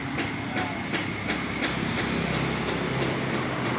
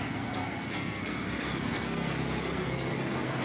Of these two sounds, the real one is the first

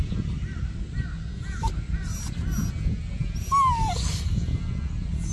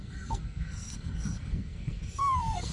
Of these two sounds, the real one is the first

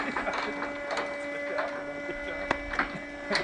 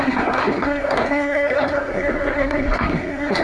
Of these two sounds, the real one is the first